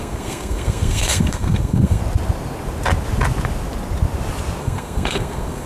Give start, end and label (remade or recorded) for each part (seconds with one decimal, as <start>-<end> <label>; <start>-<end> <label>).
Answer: 0.0-2.0 remade; 2.0-4.6 recorded; 4.6-5.7 remade